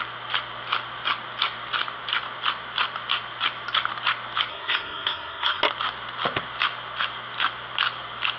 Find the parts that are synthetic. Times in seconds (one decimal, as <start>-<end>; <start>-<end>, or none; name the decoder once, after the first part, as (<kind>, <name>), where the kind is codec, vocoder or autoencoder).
4.5-5.6 (codec, SNAC)